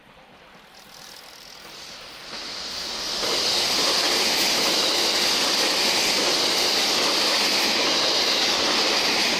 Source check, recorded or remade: recorded